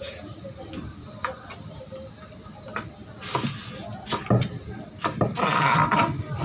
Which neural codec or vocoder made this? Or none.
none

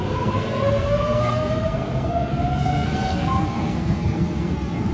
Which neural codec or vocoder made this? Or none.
codec, SNAC